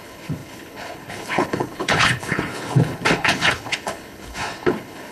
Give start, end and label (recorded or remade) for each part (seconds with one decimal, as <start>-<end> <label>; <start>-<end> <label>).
0.0-5.1 remade